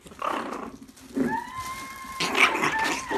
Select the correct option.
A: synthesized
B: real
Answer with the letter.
B